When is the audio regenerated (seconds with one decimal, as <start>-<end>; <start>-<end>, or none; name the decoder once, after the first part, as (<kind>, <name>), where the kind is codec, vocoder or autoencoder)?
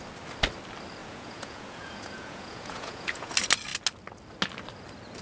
1.0-3.3 (vocoder, Vocos)